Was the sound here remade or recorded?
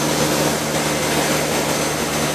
recorded